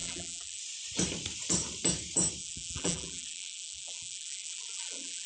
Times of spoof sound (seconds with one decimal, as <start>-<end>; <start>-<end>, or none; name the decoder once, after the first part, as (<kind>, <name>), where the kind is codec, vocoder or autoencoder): 0.0-0.6 (vocoder, BigVGAN v2); 2.4-5.3